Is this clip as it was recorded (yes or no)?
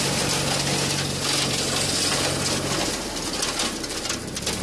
yes